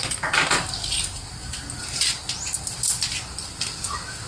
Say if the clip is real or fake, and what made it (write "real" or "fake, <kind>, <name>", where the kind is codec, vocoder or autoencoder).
real